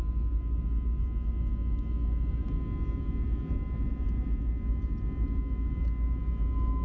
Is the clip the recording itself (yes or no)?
yes